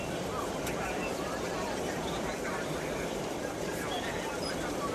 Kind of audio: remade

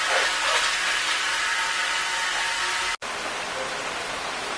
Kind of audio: recorded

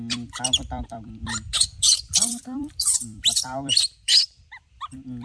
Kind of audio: remade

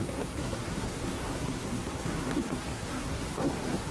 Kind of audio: remade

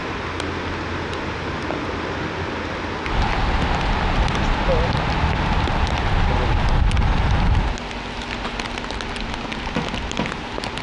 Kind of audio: recorded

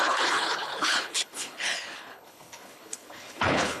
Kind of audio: remade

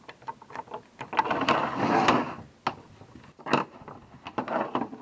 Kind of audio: recorded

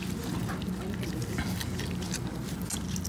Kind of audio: recorded